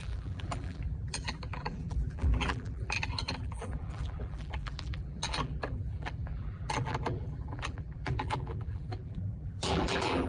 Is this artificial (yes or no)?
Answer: yes